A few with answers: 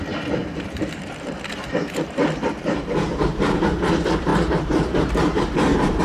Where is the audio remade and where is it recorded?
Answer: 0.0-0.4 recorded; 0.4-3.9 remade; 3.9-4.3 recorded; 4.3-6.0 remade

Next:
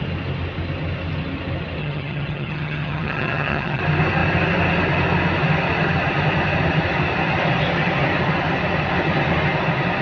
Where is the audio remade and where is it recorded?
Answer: 0.0-1.8 recorded; 1.8-3.8 remade; 3.8-10.0 recorded

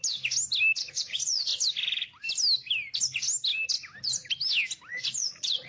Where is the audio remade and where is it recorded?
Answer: 0.0-0.9 recorded; 0.9-1.5 remade; 1.5-4.9 recorded; 4.9-5.7 remade

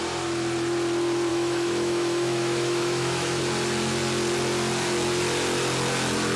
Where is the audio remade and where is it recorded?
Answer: 0.0-1.3 recorded; 1.3-3.4 remade; 3.4-6.4 recorded

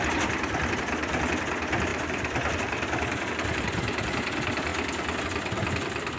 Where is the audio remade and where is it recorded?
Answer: 0.0-1.9 recorded; 1.9-3.3 remade; 3.3-6.2 recorded

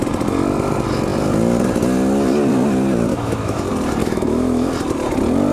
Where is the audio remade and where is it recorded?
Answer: 0.0-3.1 recorded; 3.1-3.6 remade; 3.6-4.0 recorded; 4.0-4.7 remade; 4.7-5.5 recorded

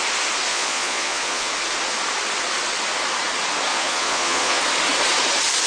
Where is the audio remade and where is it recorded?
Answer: 0.0-0.5 recorded; 0.5-1.5 remade; 1.5-3.7 recorded; 3.7-4.6 remade; 4.6-5.7 recorded

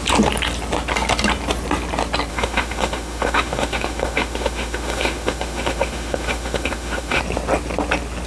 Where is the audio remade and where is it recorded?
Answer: 0.0-2.3 recorded; 2.3-7.2 remade; 7.2-8.3 recorded